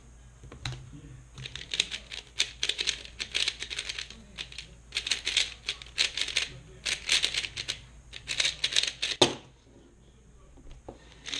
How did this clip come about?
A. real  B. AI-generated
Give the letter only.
A